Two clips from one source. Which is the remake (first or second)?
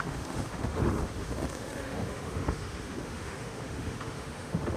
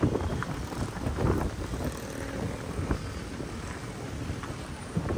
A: first